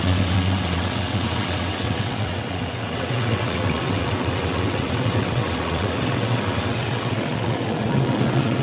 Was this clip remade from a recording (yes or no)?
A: yes